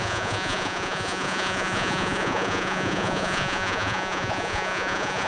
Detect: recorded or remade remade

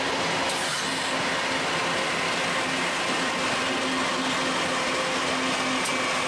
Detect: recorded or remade recorded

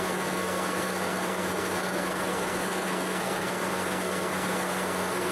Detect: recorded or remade remade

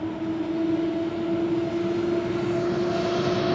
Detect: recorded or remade recorded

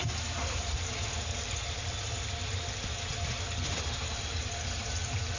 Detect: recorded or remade recorded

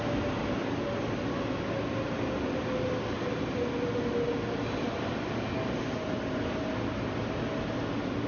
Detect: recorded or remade recorded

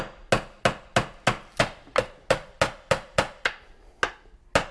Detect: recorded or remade recorded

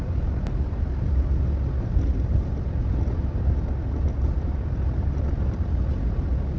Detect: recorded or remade recorded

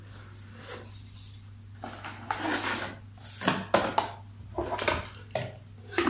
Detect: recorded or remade recorded